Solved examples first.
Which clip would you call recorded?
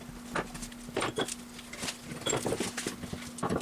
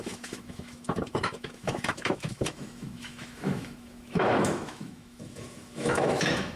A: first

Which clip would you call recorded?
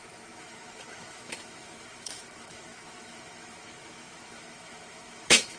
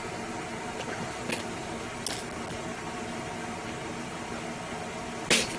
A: second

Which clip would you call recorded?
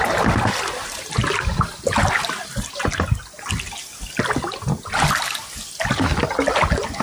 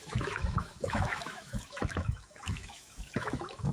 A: first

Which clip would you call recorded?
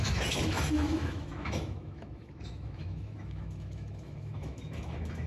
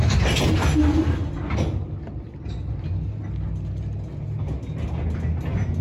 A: second